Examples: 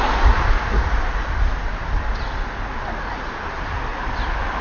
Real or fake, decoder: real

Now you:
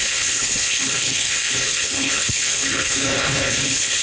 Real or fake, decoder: fake, codec, HILCodec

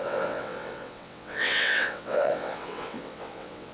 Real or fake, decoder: fake, vocoder, WaveNeXt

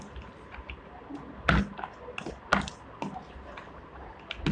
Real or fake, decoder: real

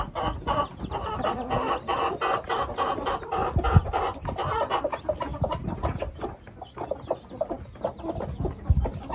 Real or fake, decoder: real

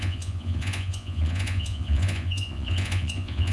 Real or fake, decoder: fake, vocoder, Vocos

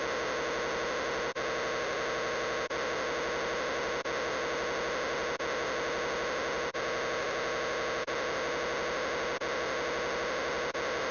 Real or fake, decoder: real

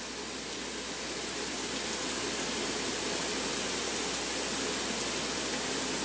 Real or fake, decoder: real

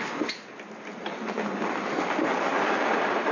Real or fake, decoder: fake, vocoder, BigVGAN v2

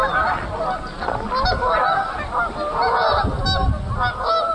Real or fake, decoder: real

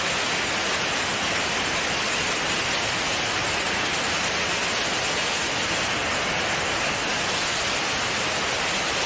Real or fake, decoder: real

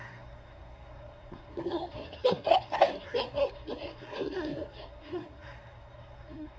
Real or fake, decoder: fake, codec, SNAC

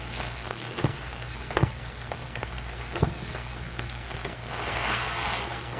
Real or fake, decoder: fake, codec, SNAC